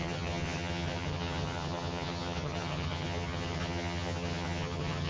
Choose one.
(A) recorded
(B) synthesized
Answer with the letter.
B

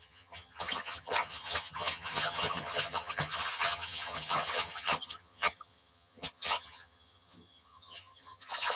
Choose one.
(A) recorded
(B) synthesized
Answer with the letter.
B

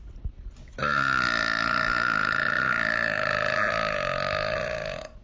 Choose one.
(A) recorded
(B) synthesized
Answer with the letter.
A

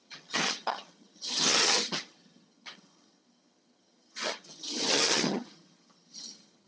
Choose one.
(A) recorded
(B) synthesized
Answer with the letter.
B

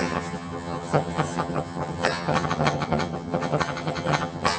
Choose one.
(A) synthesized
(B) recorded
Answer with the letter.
A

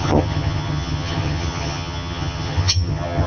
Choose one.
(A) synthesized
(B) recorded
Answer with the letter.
A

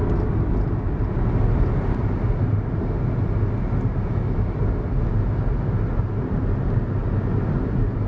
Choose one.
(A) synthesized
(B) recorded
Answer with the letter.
B